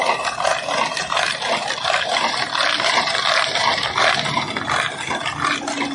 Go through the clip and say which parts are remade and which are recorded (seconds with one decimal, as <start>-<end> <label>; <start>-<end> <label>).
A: 0.0-5.9 recorded

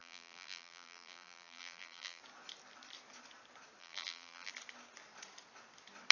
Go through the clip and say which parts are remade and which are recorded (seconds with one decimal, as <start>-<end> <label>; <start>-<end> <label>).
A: 0.0-2.2 remade; 2.2-3.8 recorded; 3.8-4.5 remade; 4.5-6.1 recorded

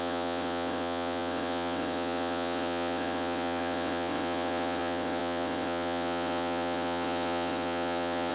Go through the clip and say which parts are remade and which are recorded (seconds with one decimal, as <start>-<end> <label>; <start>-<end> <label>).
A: 0.0-8.3 remade